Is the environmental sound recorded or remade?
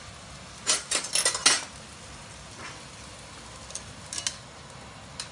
recorded